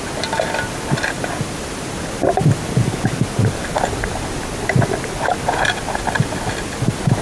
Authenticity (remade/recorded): recorded